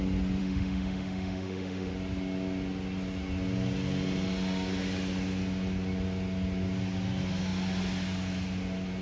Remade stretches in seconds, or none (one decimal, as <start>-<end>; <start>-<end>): 0.4-1.9